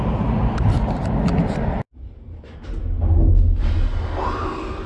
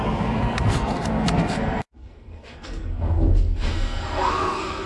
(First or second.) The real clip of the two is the first